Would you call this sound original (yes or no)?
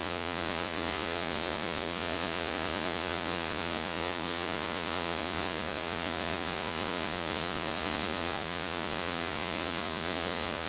no